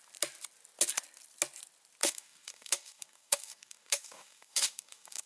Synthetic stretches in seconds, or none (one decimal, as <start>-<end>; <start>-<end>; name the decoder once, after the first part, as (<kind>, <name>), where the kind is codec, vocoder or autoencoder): 2.0-5.3 (codec, DAC)